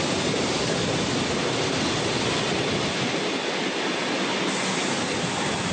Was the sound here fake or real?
real